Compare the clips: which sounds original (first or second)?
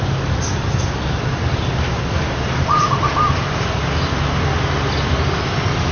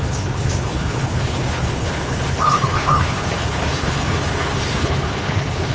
first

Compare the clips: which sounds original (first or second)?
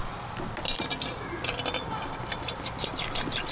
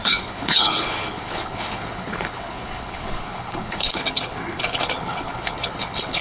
first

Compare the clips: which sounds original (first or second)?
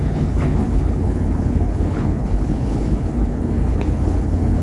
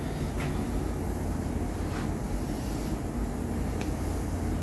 second